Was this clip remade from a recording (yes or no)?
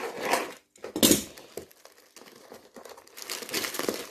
no